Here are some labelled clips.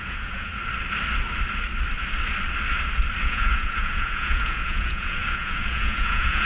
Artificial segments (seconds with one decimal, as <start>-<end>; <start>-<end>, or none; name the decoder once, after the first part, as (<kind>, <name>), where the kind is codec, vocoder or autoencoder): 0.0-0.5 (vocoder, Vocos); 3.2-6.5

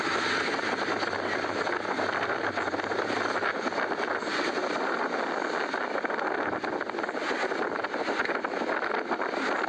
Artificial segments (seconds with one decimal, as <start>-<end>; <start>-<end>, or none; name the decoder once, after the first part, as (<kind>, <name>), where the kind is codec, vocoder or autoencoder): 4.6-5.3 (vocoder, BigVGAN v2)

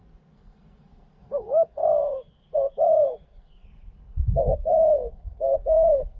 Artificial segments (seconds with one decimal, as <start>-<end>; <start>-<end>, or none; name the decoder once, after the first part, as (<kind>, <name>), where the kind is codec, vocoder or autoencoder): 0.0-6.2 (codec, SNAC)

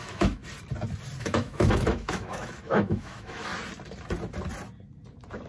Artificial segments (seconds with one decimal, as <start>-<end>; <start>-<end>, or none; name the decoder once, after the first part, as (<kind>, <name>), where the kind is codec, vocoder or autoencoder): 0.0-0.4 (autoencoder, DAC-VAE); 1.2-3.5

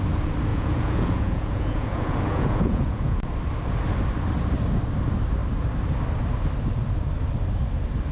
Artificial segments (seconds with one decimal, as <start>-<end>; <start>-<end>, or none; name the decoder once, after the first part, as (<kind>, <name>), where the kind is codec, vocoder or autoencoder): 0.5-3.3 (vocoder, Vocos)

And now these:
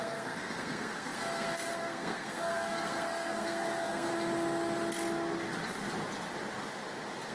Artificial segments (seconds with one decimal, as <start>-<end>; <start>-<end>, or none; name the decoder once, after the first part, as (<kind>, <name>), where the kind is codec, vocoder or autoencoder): 0.0-4.1 (codec, SNAC)